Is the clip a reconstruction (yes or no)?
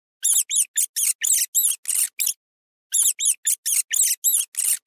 no